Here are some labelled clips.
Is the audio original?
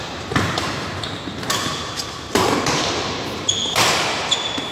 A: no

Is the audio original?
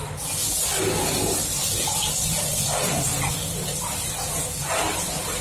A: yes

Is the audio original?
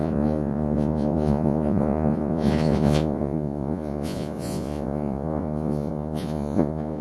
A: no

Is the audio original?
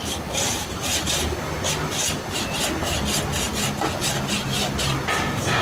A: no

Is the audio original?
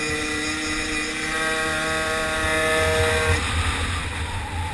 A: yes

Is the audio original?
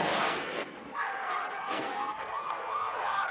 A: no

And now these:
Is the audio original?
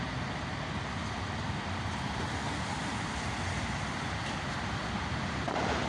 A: yes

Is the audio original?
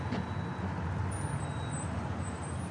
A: yes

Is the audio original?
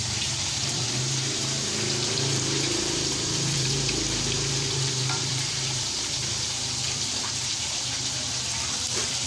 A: no